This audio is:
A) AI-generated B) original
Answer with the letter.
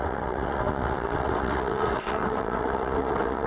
A